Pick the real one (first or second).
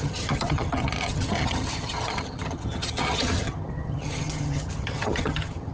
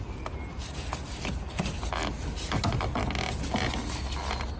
second